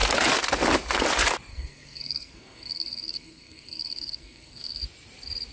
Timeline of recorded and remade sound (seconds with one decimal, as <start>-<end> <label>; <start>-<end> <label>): 0.0-1.5 recorded; 1.5-4.8 remade; 4.8-5.5 recorded